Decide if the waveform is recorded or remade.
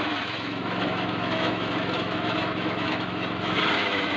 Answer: remade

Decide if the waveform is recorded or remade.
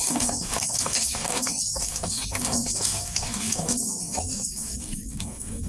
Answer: remade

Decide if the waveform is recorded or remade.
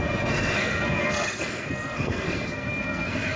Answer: remade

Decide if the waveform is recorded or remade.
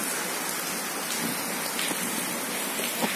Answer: recorded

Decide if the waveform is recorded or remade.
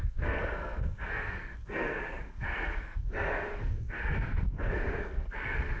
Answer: remade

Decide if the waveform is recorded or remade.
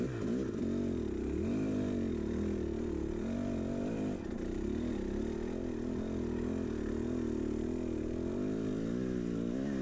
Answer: recorded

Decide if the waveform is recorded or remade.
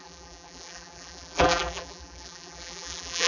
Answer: remade